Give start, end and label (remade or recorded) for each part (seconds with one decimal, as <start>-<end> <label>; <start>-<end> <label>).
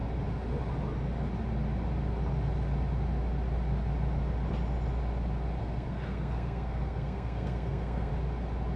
0.0-5.6 recorded; 5.6-8.1 remade; 8.1-8.8 recorded